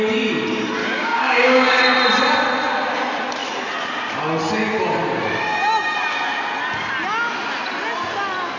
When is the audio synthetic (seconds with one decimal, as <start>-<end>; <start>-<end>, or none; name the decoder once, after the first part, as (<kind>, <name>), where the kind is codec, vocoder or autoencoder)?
0.8-1.8 (codec, DAC)